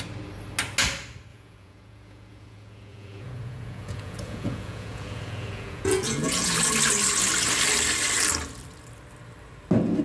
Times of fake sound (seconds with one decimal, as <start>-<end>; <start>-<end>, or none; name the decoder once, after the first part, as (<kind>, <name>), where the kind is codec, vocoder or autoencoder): 1.3-6.5 (vocoder, Vocos)